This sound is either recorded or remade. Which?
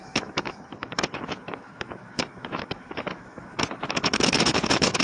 remade